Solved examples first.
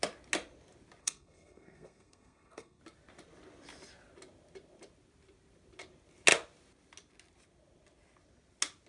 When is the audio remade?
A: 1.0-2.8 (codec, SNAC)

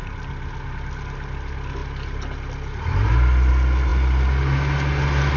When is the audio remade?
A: none

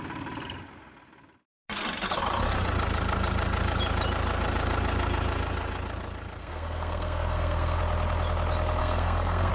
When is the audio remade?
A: 6.4-7.8 (codec, SNAC); 8.8-9.5

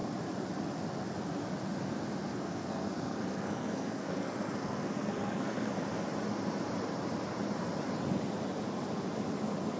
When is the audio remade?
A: 2.3-5.7 (codec, SNAC)

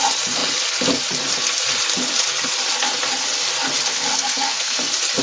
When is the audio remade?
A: 3.9-4.8 (codec, SNAC)